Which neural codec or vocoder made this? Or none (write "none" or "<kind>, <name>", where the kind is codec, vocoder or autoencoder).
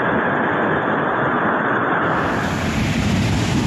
none